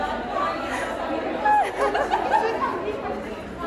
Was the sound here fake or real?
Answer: real